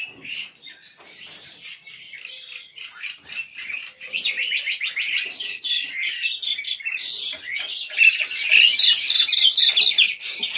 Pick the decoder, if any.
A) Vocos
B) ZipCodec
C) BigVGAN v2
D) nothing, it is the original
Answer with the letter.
D